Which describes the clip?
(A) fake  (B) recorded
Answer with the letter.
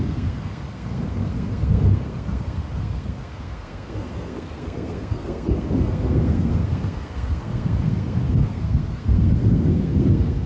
A